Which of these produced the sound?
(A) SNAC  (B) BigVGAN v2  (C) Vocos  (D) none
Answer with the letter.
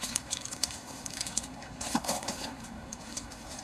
A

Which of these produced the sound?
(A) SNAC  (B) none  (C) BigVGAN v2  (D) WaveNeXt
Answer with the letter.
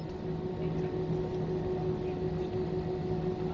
B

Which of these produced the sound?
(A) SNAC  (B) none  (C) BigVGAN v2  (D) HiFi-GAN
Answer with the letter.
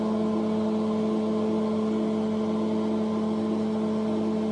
B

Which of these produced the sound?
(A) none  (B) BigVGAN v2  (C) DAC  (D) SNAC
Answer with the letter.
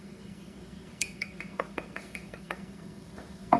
D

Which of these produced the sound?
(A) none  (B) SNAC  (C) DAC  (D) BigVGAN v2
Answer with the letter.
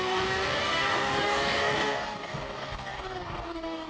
C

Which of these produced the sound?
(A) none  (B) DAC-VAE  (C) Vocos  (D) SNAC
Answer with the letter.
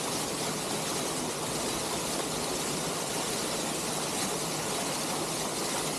A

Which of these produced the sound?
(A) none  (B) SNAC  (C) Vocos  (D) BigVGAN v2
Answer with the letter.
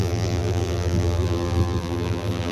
D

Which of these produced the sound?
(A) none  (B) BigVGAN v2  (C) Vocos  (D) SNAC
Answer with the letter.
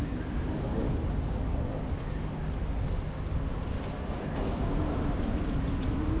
A